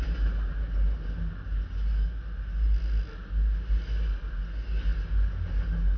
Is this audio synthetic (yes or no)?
no